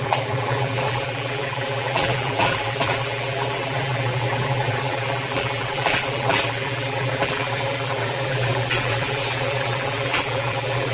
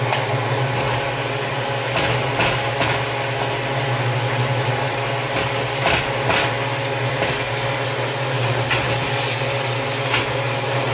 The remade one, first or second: first